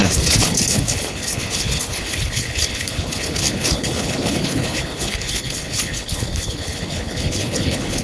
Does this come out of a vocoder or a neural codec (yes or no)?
yes